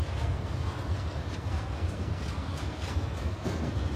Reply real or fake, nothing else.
fake